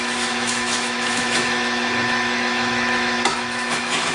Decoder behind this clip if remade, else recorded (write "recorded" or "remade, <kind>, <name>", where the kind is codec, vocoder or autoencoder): remade, autoencoder, DAC-VAE